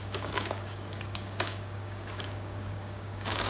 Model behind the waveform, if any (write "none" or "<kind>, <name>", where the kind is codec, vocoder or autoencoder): codec, DAC